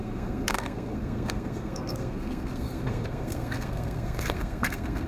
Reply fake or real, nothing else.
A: fake